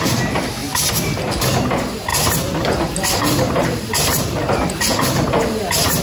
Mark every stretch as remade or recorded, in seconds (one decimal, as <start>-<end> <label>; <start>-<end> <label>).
0.0-0.6 recorded; 0.6-1.2 remade; 1.2-2.1 recorded; 2.1-4.7 remade; 4.7-6.0 recorded